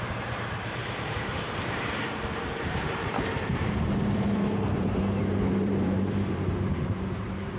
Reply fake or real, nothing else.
fake